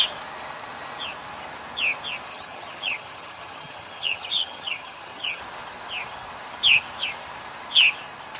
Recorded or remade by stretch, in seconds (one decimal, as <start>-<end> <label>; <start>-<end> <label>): 0.0-2.3 recorded; 2.3-5.4 remade; 5.4-8.4 recorded